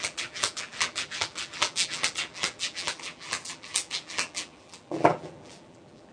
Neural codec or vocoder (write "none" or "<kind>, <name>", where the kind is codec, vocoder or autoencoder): vocoder, BigVGAN v2